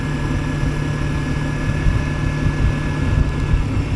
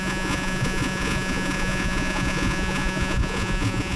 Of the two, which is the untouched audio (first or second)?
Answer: first